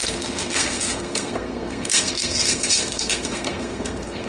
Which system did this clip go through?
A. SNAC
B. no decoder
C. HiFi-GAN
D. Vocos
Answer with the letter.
A